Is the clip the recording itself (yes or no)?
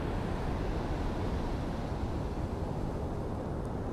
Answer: yes